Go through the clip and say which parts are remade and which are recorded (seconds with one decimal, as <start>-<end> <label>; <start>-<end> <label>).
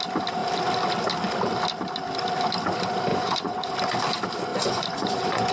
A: 0.0-3.1 recorded; 3.1-3.7 remade; 3.7-4.5 recorded; 4.5-5.5 remade